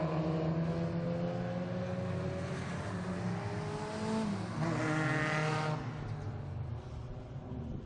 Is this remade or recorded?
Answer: recorded